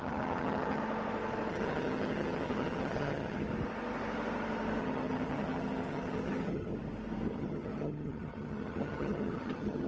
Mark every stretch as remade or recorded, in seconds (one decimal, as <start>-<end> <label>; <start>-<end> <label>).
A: 0.0-0.8 remade; 0.8-1.5 recorded; 1.5-3.5 remade; 3.5-4.8 recorded; 4.8-6.7 remade; 6.7-7.3 recorded; 7.3-9.9 remade

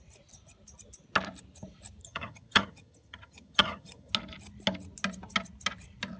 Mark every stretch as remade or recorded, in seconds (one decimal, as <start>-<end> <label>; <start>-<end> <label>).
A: 0.0-2.0 recorded; 2.0-4.1 remade; 4.1-6.2 recorded

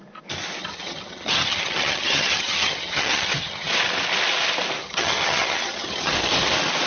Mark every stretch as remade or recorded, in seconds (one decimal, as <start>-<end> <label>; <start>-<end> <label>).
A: 0.0-0.6 recorded; 0.6-3.7 remade; 3.7-4.8 recorded; 4.8-6.1 remade; 6.1-6.9 recorded

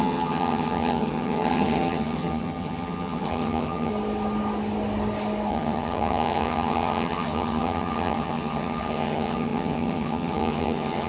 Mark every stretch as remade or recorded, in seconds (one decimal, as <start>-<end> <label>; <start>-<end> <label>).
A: 0.0-3.9 remade; 3.9-5.5 recorded; 5.5-11.1 remade

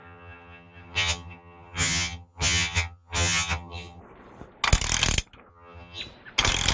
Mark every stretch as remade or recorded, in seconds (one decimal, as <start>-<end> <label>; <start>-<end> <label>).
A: 0.0-4.0 remade; 4.0-5.5 recorded; 5.5-6.0 remade; 6.0-6.7 recorded

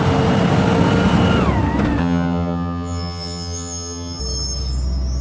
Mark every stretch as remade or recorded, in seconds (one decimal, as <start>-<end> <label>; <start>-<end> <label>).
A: 0.0-2.0 recorded; 2.0-4.2 remade; 4.2-5.2 recorded

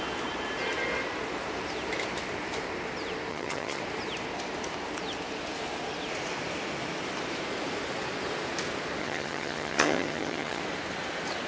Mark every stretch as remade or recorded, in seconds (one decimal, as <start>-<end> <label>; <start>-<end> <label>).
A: 0.0-3.3 recorded; 3.3-3.8 remade; 3.8-9.0 recorded; 9.0-10.6 remade; 10.6-11.5 recorded

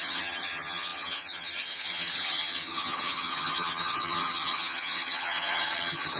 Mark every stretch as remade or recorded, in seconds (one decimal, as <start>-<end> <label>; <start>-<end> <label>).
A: 0.0-6.2 remade